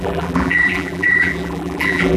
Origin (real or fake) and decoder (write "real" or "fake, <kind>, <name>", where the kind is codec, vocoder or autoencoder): fake, vocoder, BigVGAN v2